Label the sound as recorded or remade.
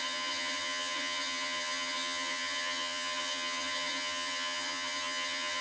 remade